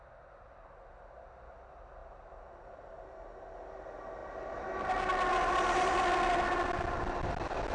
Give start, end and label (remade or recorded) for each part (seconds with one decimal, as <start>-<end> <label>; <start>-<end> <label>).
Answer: 0.0-7.7 recorded